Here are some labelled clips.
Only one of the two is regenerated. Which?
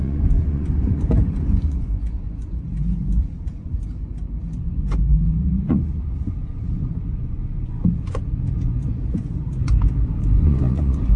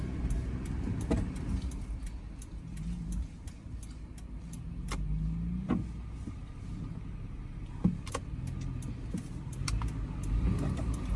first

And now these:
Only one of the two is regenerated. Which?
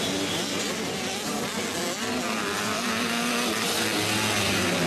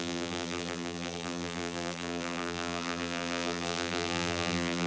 second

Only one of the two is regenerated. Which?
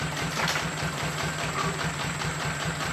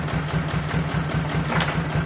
first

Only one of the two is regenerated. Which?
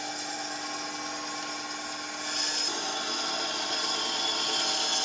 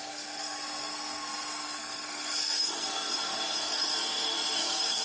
second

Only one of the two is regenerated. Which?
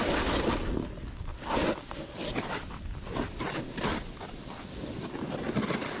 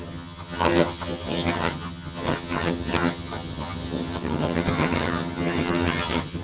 second